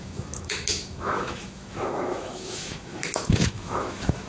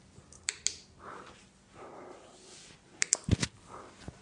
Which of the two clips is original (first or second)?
second